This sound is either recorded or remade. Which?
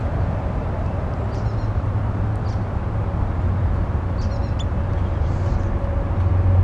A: recorded